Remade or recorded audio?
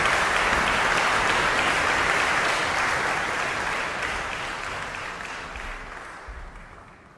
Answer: recorded